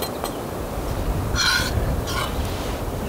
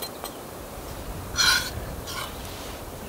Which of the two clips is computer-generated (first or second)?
second